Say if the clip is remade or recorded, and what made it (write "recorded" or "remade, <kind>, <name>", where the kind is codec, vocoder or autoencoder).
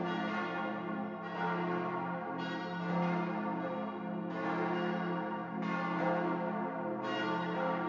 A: recorded